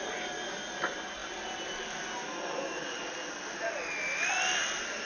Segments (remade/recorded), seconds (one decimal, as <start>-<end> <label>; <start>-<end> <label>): 0.0-5.1 recorded